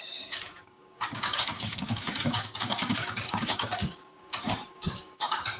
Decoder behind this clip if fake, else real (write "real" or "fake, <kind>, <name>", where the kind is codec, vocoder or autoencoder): fake, codec, DAC